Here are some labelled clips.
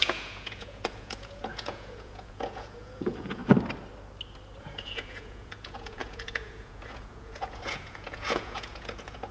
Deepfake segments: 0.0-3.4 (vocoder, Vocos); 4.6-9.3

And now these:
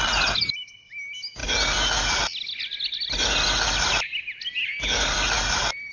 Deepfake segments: none

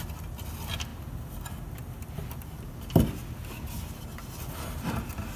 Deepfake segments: none

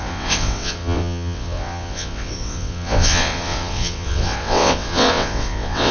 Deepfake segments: 0.0-5.9 (vocoder, WaveNeXt)

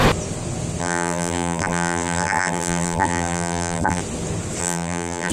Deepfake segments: 0.8-4.0 (vocoder, BigVGAN v2); 4.6-5.3

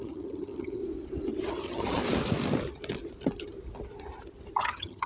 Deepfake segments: 0.0-0.8 (vocoder, HiFi-GAN); 1.5-2.0; 4.6-5.1

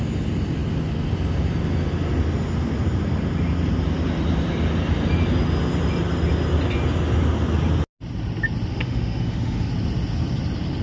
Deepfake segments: 8.7-9.7 (autoencoder, DAC-VAE)